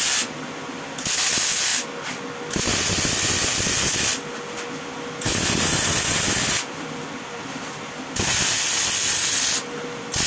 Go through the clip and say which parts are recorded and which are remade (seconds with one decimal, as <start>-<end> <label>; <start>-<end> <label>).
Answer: 0.0-1.7 remade; 1.7-2.9 recorded; 2.9-10.3 remade